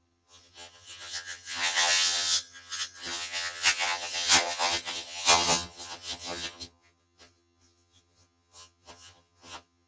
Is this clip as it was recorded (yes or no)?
no